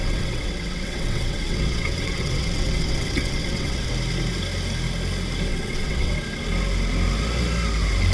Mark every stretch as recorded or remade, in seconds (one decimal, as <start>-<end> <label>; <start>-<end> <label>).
0.0-3.9 remade; 3.9-5.5 recorded; 5.5-6.1 remade; 6.1-8.1 recorded